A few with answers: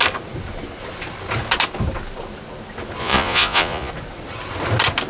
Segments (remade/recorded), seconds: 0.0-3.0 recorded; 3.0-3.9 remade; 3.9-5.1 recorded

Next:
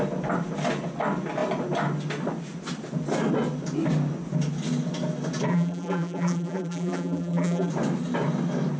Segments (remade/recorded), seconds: 0.0-5.5 recorded; 5.5-7.7 remade; 7.7-8.8 recorded

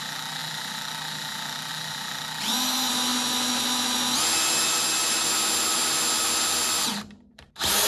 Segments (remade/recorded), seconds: 0.0-7.9 recorded

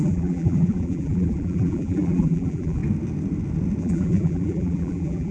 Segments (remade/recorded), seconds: 0.0-2.8 remade; 2.8-3.8 recorded; 3.8-5.3 remade

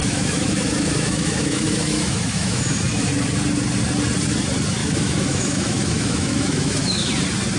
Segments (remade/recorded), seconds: 0.0-2.6 remade; 2.6-4.8 recorded; 4.8-7.1 remade; 7.1-7.6 recorded

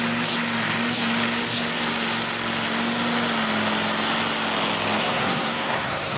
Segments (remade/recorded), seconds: 0.0-5.0 recorded; 5.0-6.2 remade